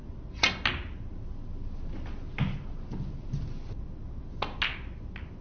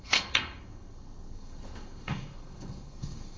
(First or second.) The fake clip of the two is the second